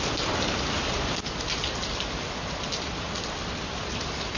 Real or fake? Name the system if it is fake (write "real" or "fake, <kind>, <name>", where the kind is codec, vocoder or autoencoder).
real